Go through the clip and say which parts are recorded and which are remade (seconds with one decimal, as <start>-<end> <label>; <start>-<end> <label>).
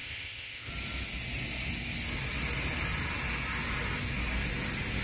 0.0-0.7 remade; 0.7-5.0 recorded